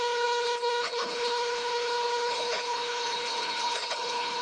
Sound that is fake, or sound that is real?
fake